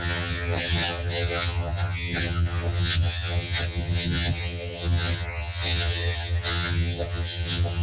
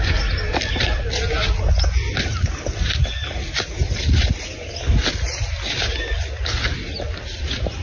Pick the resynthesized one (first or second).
first